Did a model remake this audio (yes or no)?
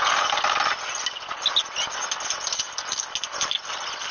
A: no